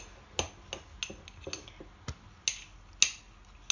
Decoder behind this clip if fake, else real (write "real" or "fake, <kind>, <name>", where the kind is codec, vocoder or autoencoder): real